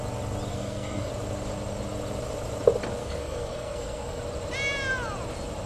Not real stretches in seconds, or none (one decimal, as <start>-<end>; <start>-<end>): 0.5-1.1; 3.0-4.2